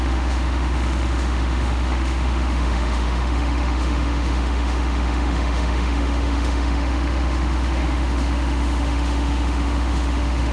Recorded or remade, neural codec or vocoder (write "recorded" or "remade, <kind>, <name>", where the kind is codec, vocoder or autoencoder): remade, autoencoder, DAC-VAE